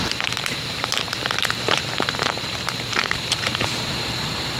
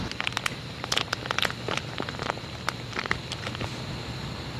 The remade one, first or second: first